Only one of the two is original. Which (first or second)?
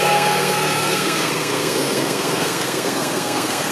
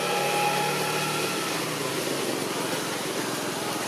second